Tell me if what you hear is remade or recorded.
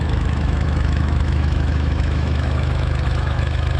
remade